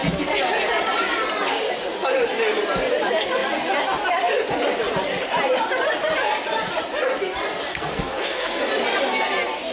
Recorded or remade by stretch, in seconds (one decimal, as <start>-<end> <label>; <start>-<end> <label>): 0.0-7.7 recorded; 7.7-8.6 remade; 8.6-9.7 recorded